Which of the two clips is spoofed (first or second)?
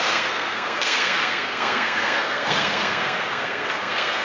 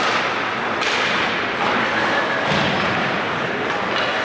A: first